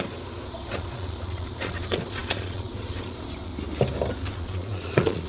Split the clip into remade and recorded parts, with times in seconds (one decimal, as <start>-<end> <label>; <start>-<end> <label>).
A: 0.0-3.5 remade; 3.5-4.3 recorded; 4.3-5.3 remade